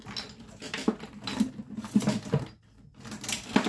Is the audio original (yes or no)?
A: yes